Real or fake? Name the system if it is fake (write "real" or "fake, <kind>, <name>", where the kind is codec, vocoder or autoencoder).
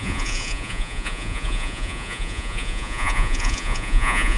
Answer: fake, vocoder, Vocos